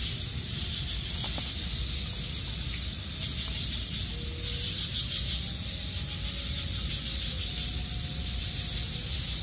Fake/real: real